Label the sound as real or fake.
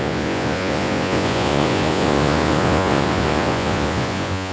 fake